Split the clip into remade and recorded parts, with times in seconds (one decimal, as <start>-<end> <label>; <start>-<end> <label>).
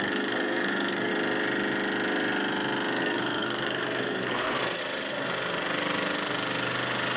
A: 0.0-1.1 remade; 1.1-3.0 recorded; 3.0-4.8 remade; 4.8-7.2 recorded